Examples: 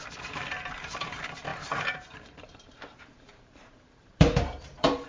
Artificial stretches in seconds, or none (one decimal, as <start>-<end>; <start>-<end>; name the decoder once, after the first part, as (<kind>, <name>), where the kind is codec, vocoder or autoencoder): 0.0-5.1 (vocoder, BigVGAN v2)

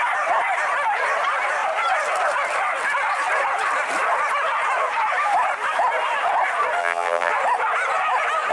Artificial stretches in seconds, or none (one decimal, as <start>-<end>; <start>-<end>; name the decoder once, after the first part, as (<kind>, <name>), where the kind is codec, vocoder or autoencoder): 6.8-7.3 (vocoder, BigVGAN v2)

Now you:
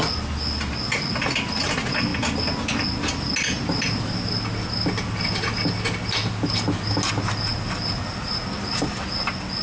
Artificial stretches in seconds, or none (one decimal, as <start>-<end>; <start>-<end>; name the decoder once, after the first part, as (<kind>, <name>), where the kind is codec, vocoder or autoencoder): none

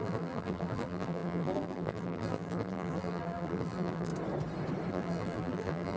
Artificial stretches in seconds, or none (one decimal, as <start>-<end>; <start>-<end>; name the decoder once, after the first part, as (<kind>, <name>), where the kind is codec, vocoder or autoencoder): 0.0-4.1 (vocoder, BigVGAN v2); 4.9-6.0

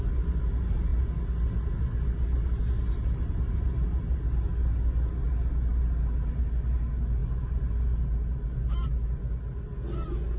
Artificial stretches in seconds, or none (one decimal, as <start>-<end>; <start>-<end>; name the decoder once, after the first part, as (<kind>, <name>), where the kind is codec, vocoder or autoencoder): none

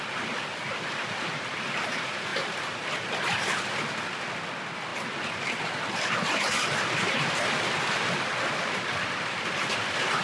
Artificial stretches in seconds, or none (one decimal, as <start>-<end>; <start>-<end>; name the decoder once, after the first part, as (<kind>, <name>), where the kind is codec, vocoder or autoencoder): none

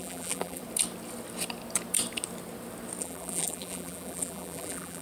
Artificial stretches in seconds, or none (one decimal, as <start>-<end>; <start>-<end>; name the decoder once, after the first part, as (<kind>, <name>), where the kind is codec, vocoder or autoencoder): 0.0-0.6 (vocoder, BigVGAN v2); 3.0-5.0

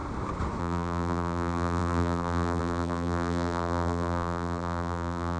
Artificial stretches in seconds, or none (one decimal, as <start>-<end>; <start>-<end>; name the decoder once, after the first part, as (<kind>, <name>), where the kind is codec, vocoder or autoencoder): 0.6-5.4 (vocoder, BigVGAN v2)